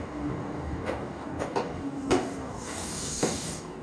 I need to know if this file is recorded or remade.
remade